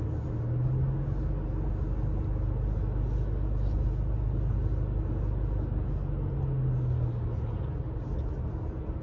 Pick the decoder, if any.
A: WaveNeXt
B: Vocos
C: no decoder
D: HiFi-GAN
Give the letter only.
C